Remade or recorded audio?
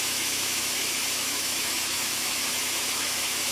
remade